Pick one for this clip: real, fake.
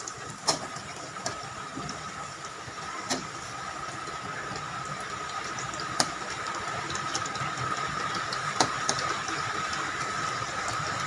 real